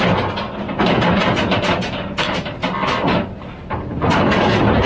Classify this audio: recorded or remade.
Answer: recorded